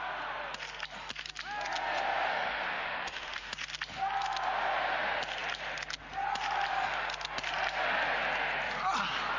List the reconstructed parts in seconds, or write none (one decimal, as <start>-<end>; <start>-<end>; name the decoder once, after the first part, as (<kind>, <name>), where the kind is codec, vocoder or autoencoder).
2.3-3.5 (autoencoder, DAC-VAE)